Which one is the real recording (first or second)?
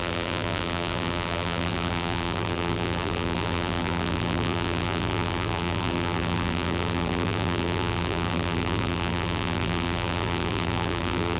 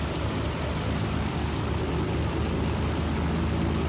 second